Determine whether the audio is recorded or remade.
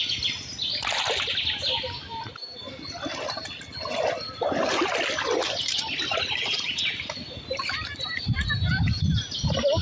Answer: recorded